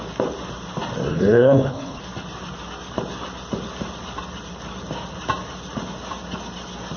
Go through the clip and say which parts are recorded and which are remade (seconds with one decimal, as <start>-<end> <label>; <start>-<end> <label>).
0.0-1.1 recorded; 1.1-2.0 remade; 2.0-7.0 recorded